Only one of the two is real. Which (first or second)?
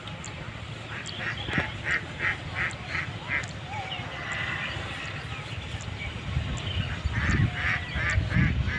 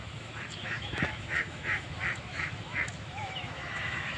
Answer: first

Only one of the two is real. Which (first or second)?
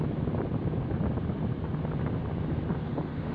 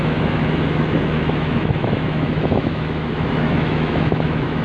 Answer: first